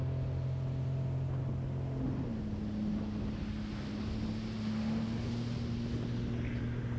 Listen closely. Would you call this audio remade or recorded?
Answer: recorded